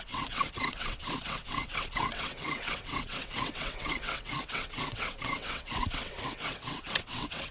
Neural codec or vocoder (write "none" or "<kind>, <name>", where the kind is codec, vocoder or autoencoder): vocoder, WaveNeXt